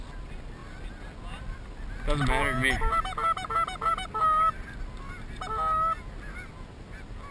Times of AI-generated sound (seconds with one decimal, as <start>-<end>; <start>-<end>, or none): none